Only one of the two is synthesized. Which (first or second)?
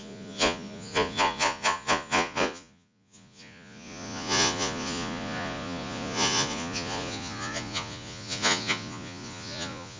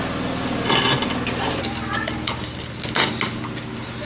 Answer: first